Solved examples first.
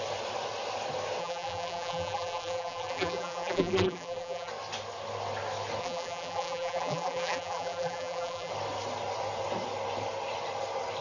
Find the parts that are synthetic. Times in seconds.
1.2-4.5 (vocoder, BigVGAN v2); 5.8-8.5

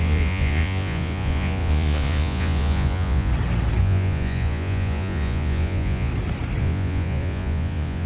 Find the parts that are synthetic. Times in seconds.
0.0-3.3 (vocoder, Vocos); 3.8-6.1; 6.6-8.1

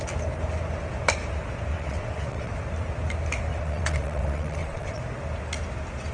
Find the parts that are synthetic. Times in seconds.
1.7-2.5 (vocoder, WaveNeXt); 3.5-5.0

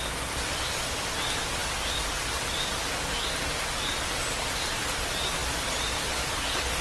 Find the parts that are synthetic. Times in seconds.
none

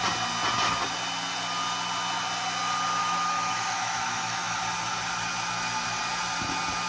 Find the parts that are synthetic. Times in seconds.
3.0-4.6 (autoencoder, DAC-VAE)

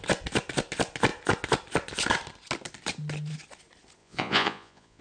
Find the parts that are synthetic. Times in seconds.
4.0-5.0 (vocoder, Vocos)

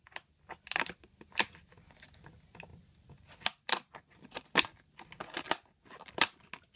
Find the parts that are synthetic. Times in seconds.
none